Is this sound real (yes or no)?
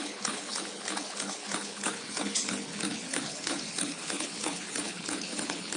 no